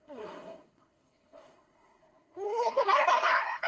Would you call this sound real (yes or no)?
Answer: no